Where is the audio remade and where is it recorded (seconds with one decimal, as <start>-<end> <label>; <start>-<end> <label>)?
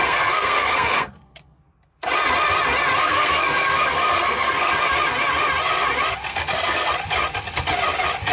0.0-1.6 remade; 1.6-3.0 recorded; 3.0-4.8 remade; 4.8-6.3 recorded; 6.3-6.9 remade; 6.9-8.3 recorded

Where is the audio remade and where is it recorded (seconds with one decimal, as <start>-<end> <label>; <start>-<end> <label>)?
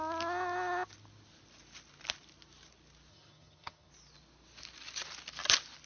0.0-3.1 recorded; 3.1-3.9 remade; 3.9-5.9 recorded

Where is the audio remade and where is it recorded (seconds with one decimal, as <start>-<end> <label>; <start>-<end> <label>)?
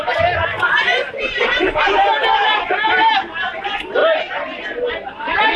0.0-0.9 recorded; 0.9-3.6 remade; 3.6-5.6 recorded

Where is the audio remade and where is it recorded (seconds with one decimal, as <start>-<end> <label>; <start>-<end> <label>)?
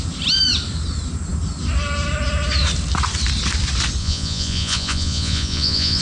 0.0-4.0 recorded; 4.0-6.0 remade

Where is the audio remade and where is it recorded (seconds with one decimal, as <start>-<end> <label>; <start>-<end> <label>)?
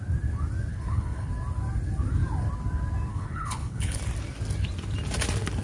0.0-0.7 recorded; 0.7-1.3 remade; 1.3-3.1 recorded; 3.1-4.0 remade; 4.0-5.6 recorded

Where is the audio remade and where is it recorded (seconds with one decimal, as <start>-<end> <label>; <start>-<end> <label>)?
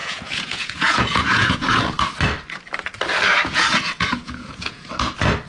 0.0-1.8 remade; 1.8-3.3 recorded; 3.3-4.9 remade; 4.9-5.5 recorded